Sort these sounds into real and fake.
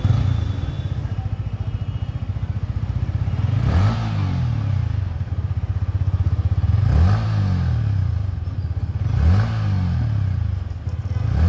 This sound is real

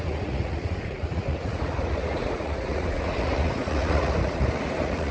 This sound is fake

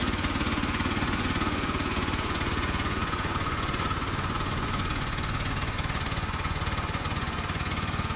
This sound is fake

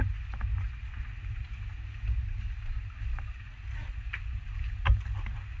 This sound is real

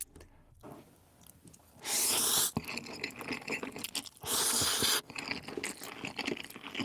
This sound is real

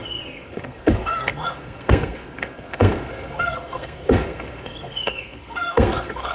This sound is fake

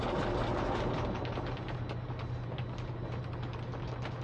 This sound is real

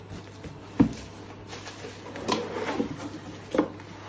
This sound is real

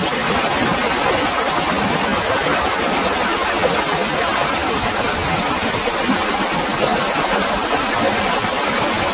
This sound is real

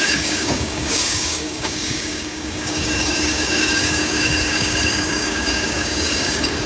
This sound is fake